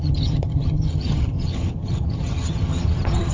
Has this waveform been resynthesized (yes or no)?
yes